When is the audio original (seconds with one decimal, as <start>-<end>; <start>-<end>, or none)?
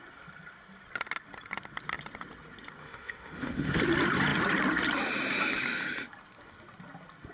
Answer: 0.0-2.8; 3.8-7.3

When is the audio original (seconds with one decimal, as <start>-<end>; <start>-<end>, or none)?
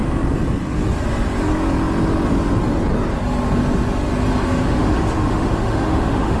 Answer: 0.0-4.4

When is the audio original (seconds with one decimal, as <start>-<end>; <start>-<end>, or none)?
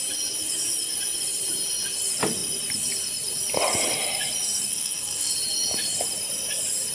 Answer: 0.0-4.7; 5.3-6.9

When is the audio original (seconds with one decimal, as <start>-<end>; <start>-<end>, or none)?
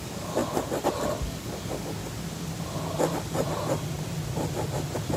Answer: 0.4-1.2; 2.0-5.2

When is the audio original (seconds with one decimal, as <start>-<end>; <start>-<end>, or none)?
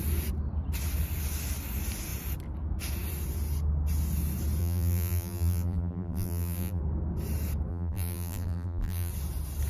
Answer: 0.0-4.6; 6.8-7.7; 9.1-9.7